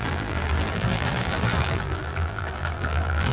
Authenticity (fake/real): fake